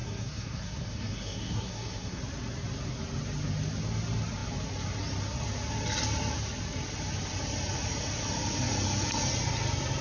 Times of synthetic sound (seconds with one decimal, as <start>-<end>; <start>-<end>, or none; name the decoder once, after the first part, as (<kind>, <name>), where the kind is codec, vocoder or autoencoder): 0.0-2.2 (codec, SNAC)